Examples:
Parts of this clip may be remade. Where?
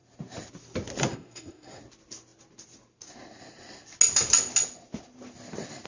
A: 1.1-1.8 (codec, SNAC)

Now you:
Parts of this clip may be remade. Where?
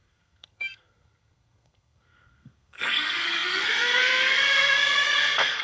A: 0.0-5.6 (codec, SNAC)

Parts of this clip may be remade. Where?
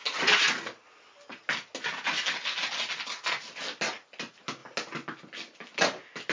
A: none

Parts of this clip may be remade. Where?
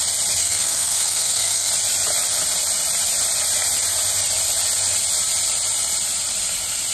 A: 0.4-1.7 (codec, SNAC)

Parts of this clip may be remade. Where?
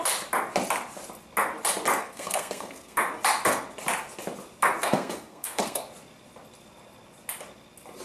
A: 2.0-3.1 (codec, SNAC); 4.8-5.8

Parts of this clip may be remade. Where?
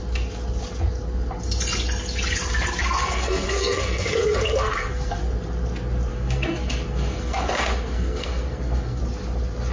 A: 2.8-5.2 (codec, SNAC); 6.1-9.0